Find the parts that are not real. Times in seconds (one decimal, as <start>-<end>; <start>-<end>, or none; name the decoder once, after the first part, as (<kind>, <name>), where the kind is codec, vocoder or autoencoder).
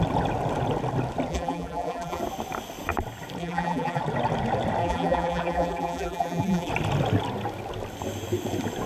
1.3-2.2 (vocoder, BigVGAN v2); 3.4-4.0; 4.8-6.7